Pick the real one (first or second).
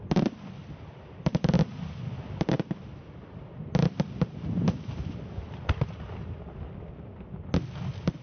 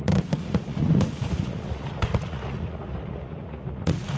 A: first